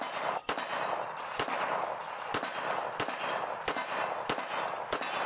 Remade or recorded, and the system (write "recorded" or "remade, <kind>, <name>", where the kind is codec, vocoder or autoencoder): recorded